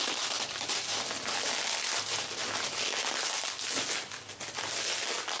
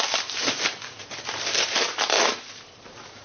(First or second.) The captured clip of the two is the first